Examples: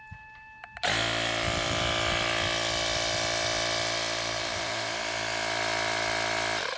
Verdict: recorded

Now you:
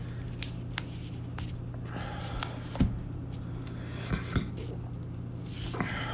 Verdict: recorded